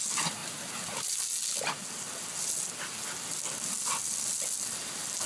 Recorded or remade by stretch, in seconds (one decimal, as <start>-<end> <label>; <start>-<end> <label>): 0.0-5.3 recorded